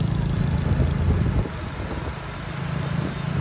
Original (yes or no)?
yes